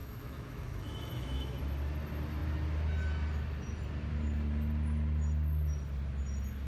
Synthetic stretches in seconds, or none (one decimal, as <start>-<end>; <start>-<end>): 0.0-1.6